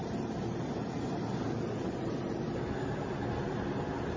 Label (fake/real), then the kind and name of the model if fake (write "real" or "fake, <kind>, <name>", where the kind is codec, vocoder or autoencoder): real